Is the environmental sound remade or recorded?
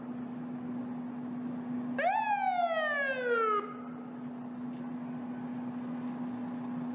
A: recorded